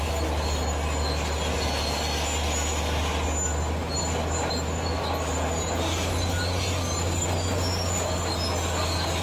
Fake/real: real